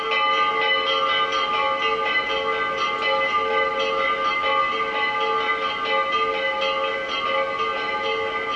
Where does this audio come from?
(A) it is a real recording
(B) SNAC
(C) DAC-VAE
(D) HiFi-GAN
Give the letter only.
A